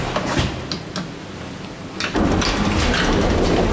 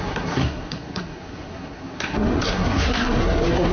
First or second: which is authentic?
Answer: first